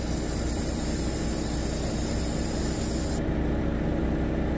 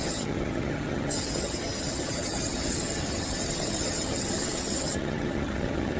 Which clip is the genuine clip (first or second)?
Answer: first